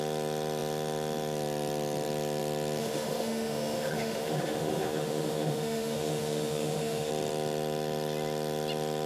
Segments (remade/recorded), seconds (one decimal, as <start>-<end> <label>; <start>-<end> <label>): 0.0-2.8 recorded; 2.8-7.1 remade; 7.1-9.1 recorded